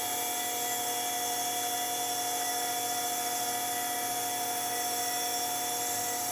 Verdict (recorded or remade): recorded